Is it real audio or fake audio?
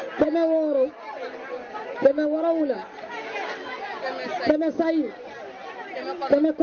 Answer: real